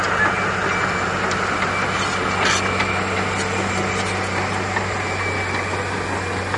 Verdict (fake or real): real